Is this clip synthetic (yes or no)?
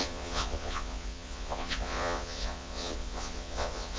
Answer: yes